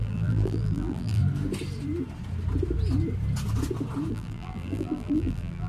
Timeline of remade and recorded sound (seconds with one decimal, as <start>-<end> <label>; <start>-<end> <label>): 0.0-1.2 remade; 1.2-4.1 recorded; 4.1-5.7 remade